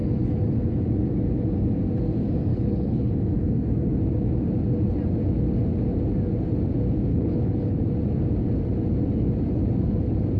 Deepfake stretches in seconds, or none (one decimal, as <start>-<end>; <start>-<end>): 2.5-3.1; 7.1-7.8